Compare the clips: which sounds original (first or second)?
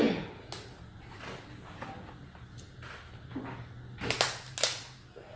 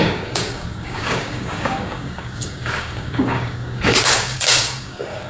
first